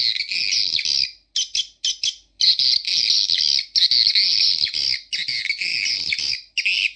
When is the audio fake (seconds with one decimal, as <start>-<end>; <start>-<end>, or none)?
none